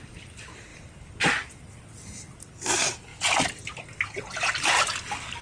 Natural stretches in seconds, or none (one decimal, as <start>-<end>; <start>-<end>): 0.0-0.7; 1.3-5.4